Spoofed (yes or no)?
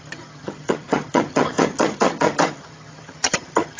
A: yes